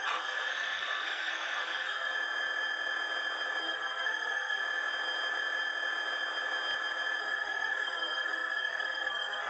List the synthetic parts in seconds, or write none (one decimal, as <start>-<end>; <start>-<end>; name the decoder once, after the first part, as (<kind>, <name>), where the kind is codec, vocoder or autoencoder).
0.0-2.1 (codec, SNAC); 3.6-4.6; 7.2-9.5

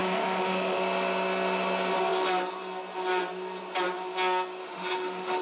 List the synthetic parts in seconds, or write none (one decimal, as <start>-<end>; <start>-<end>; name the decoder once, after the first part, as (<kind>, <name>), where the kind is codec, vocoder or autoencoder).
0.0-0.8 (autoencoder, DAC-VAE); 4.6-5.4

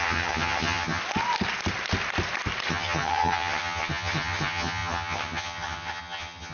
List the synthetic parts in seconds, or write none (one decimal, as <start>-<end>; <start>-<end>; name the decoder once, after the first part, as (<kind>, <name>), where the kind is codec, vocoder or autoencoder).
0.0-1.0 (vocoder, HiFi-GAN); 2.7-6.5

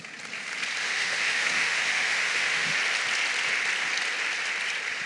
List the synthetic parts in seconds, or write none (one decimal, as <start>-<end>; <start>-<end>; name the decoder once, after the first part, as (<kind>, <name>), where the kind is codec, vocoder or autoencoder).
0.8-2.8 (autoencoder, DAC-VAE)

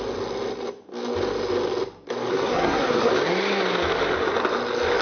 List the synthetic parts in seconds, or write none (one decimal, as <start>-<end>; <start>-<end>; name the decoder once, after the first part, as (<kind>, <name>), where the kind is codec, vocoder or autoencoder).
2.3-3.1 (codec, SNAC)

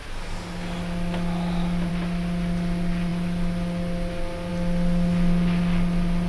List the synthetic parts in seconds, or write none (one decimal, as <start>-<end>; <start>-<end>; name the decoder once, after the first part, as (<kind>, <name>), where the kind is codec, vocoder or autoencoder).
none

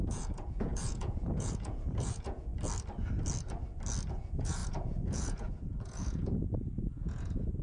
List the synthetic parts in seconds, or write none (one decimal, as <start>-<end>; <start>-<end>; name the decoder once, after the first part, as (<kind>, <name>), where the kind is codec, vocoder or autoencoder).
0.0-2.5 (vocoder, Vocos); 4.1-7.6